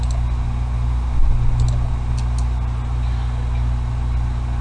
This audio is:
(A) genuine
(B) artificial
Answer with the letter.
A